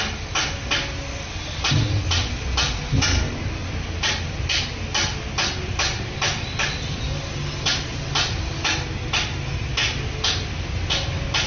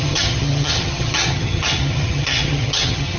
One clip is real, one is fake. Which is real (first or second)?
first